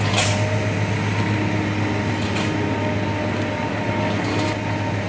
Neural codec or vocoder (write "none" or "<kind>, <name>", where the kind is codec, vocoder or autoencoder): none